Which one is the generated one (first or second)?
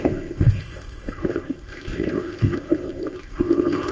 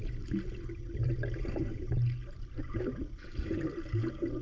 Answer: first